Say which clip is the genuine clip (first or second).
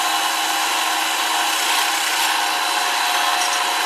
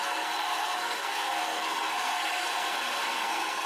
first